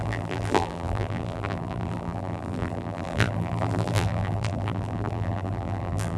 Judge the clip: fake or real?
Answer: fake